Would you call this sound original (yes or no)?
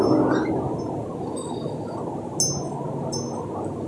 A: yes